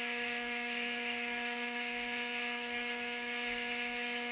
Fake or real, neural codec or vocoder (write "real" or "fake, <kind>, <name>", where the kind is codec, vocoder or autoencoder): fake, codec, SNAC